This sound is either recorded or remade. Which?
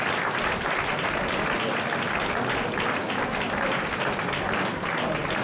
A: recorded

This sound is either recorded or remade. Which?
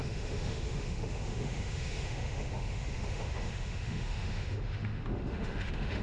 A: remade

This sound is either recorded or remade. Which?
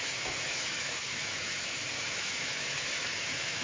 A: remade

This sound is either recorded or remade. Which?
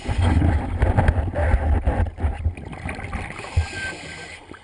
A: recorded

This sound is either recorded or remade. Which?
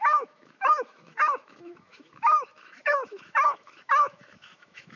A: remade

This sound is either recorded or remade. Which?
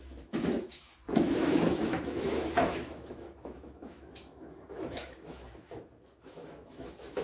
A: remade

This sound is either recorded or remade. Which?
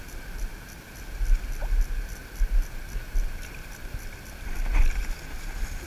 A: recorded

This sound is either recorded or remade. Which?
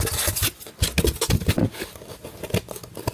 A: recorded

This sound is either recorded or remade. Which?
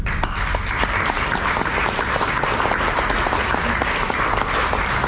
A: recorded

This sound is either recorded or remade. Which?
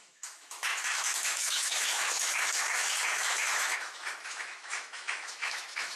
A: remade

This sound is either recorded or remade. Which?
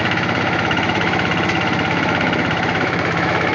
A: remade